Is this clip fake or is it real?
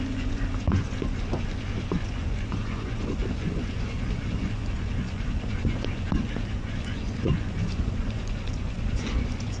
fake